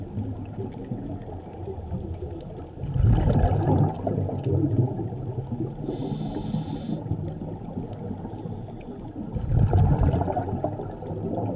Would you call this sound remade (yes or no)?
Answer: no